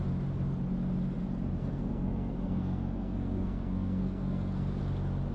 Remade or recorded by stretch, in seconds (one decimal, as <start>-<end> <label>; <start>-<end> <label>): 0.0-1.6 recorded; 1.6-4.8 remade; 4.8-5.3 recorded